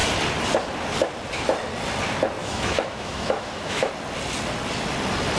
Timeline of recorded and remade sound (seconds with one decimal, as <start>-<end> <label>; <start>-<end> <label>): 0.0-2.4 recorded; 2.4-3.9 remade; 3.9-5.4 recorded